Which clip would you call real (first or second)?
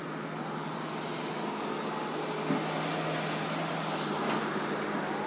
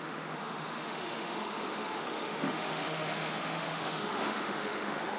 first